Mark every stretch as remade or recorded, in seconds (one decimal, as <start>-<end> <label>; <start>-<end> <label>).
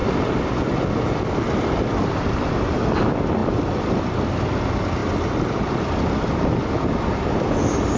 0.0-8.0 recorded